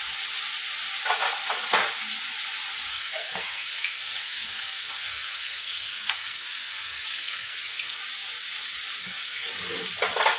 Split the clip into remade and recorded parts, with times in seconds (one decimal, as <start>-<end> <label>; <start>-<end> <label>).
0.0-2.9 recorded; 2.9-8.0 remade; 8.0-9.0 recorded; 9.0-9.5 remade; 9.5-10.4 recorded